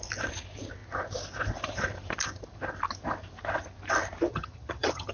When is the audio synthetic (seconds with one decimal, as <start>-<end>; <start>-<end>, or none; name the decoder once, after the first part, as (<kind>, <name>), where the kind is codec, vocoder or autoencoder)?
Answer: 4.3-5.1 (vocoder, HiFi-GAN)